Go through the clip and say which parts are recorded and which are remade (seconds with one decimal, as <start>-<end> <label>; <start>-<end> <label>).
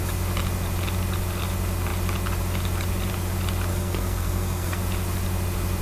0.0-3.7 recorded; 3.7-4.8 remade; 4.8-5.8 recorded